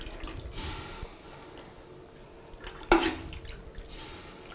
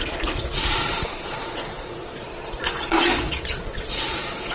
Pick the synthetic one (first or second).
second